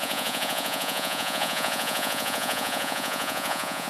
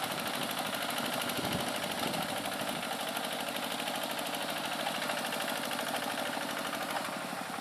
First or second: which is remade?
first